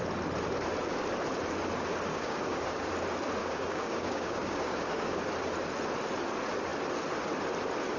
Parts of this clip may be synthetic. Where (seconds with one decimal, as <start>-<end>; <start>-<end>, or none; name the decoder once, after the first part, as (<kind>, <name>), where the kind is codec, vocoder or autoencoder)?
2.1-2.9 (codec, DAC); 3.4-5.3